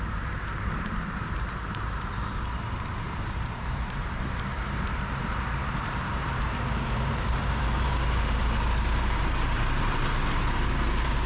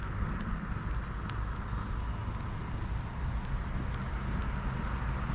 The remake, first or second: first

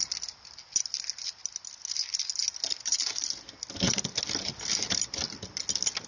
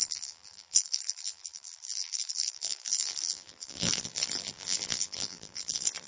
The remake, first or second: second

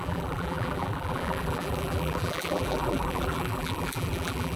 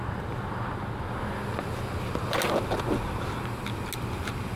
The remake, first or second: first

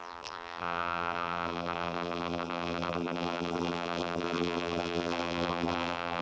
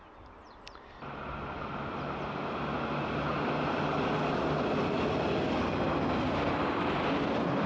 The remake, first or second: first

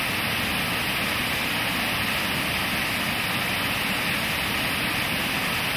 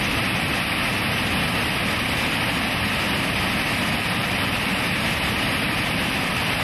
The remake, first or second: second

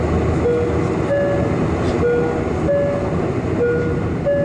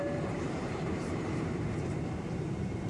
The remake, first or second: second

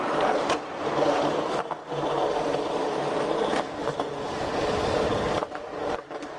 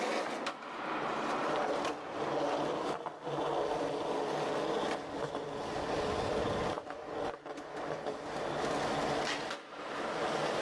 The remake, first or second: first